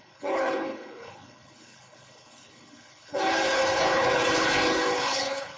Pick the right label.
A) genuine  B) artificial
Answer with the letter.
B